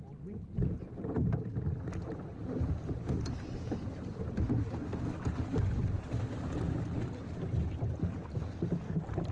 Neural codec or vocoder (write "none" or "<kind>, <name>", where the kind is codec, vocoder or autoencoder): none